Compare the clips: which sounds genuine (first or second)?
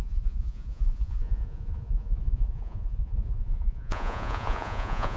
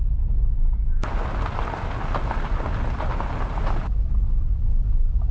second